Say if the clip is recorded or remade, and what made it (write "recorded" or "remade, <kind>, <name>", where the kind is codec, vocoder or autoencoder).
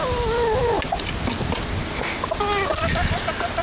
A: recorded